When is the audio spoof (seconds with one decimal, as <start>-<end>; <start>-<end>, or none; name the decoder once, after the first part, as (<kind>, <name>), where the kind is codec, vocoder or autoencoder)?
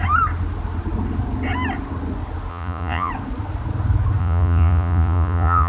2.5-3.1 (vocoder, Vocos); 4.2-5.7